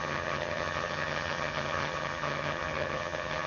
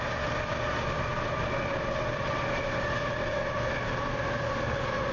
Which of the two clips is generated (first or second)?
first